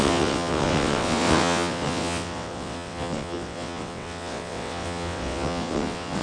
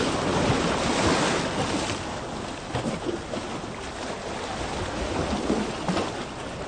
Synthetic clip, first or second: first